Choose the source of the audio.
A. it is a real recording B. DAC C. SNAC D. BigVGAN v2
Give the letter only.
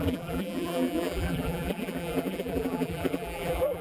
D